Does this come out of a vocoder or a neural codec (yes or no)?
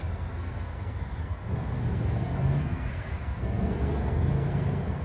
yes